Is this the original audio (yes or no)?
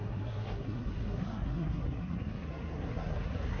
no